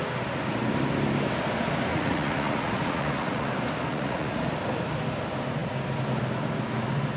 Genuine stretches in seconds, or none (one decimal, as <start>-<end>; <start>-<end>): 0.0-1.9; 3.5-3.9; 4.5-7.2

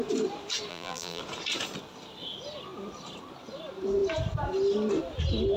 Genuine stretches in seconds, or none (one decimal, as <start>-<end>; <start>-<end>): 0.0-0.7; 1.2-5.6

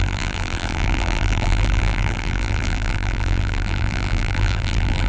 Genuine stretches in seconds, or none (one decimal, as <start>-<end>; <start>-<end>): none